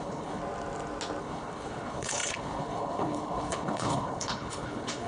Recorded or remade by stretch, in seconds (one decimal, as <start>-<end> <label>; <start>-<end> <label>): 0.0-0.4 remade; 0.4-1.2 recorded; 1.2-5.1 remade